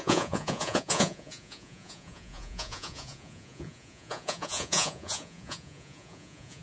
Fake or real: fake